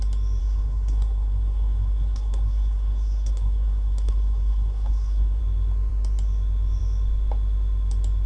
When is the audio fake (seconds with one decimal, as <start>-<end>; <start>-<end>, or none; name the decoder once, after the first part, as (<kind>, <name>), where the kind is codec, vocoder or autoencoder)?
0.4-5.4 (codec, SNAC)